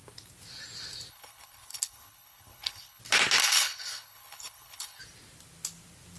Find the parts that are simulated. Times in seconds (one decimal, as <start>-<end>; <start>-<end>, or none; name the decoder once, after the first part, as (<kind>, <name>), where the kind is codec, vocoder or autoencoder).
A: 1.1-3.0 (codec, HILCodec); 3.4-5.0